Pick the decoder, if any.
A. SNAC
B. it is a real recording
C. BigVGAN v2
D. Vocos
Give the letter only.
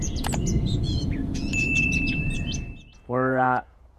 D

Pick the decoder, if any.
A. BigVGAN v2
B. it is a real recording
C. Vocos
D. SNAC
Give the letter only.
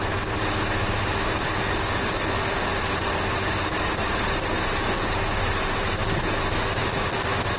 B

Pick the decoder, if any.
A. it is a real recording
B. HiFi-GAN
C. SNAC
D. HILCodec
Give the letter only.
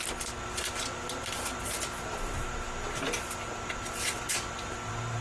A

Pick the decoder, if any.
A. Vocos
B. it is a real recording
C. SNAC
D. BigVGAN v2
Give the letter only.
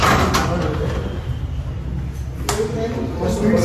B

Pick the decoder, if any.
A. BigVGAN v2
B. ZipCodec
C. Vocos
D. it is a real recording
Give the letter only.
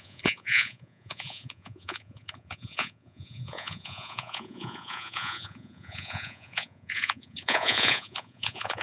C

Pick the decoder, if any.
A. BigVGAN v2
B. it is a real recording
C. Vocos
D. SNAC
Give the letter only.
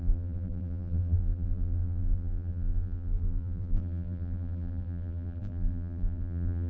A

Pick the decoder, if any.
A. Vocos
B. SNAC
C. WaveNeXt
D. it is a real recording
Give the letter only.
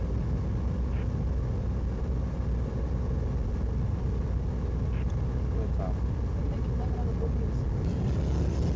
D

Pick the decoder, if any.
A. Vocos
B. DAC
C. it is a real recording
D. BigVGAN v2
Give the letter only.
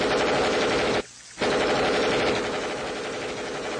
C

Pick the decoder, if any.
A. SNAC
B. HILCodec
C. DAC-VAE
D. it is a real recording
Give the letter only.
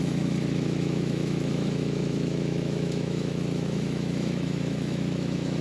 C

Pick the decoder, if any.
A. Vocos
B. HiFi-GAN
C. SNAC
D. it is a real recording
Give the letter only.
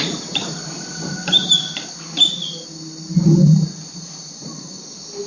D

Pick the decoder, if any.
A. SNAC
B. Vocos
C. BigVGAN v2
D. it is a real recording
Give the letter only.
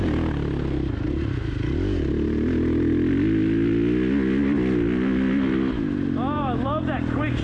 D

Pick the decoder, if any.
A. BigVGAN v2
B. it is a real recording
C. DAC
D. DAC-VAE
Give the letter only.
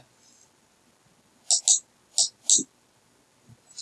B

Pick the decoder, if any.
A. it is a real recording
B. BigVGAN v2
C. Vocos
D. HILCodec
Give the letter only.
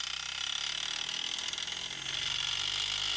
A